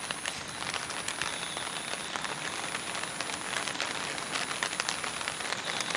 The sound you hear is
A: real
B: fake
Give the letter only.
A